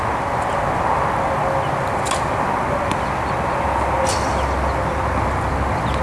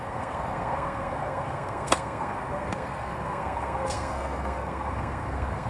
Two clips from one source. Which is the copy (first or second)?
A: second